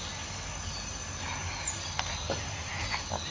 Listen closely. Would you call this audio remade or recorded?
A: recorded